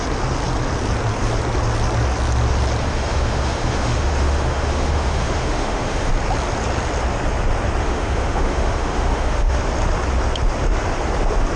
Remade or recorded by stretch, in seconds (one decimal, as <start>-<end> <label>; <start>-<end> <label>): 0.0-2.8 recorded; 2.8-6.1 remade; 6.1-7.8 recorded; 7.8-9.6 remade; 9.6-11.6 recorded